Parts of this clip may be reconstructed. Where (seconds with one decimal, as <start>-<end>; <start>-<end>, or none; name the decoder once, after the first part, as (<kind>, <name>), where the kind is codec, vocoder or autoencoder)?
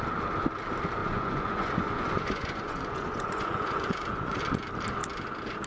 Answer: 1.0-4.4 (vocoder, Vocos)